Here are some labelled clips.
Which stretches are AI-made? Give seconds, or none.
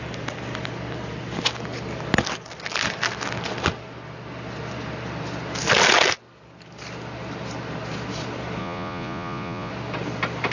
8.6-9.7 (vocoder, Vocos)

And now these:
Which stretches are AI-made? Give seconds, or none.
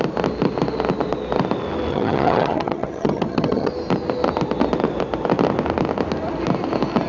1.9-3.7 (vocoder, HiFi-GAN)